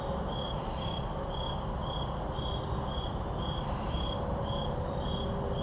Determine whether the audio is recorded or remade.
recorded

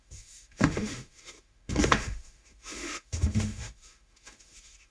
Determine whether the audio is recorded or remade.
remade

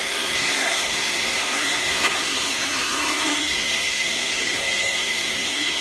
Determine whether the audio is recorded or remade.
remade